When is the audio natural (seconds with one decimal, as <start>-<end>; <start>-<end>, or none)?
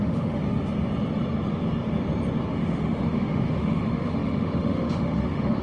0.4-2.5